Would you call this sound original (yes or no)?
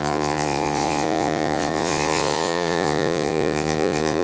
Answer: no